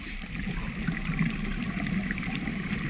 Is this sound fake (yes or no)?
no